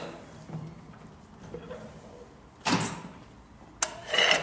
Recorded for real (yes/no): yes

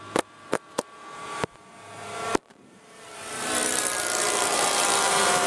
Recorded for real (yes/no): no